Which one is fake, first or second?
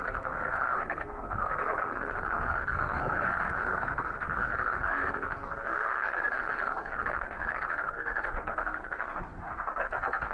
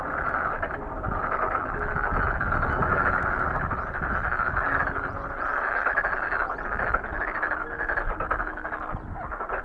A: first